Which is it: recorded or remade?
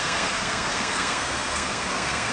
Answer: remade